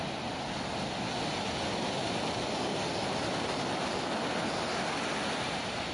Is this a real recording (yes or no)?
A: yes